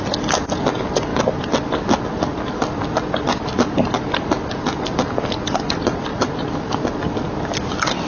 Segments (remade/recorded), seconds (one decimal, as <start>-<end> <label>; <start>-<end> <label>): 0.0-6.1 recorded; 6.1-6.9 remade; 6.9-8.1 recorded